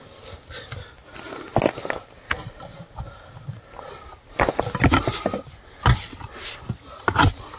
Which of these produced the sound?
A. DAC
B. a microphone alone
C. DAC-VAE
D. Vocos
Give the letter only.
B